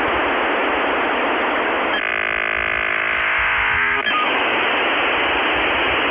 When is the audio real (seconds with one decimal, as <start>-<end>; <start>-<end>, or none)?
0.0-2.9; 4.7-6.1